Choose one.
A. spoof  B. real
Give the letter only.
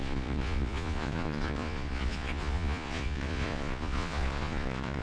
A